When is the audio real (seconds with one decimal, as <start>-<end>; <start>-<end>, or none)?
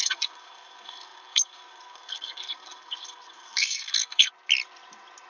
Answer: 4.3-5.3